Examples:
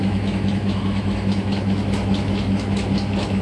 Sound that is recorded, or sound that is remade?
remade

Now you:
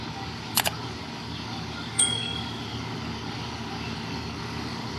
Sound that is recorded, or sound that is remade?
remade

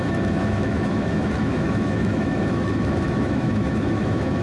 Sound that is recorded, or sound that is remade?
remade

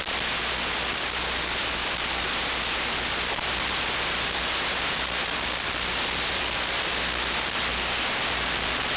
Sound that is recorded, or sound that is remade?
recorded